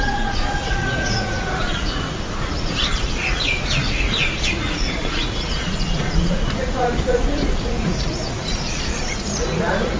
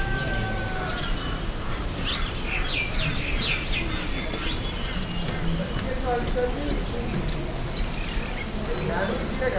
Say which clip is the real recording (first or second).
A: second